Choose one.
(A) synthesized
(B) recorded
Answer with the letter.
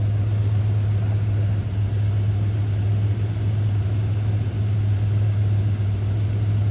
B